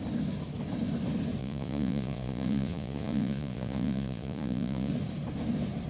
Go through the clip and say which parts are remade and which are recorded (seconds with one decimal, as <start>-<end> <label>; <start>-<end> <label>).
0.0-1.4 recorded; 1.4-4.9 remade; 4.9-5.9 recorded